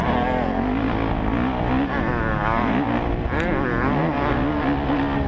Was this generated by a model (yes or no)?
no